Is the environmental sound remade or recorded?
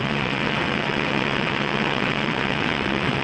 remade